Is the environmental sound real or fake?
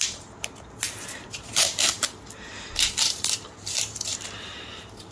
fake